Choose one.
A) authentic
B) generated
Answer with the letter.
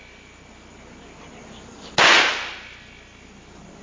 A